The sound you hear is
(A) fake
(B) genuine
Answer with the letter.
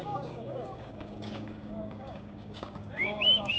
A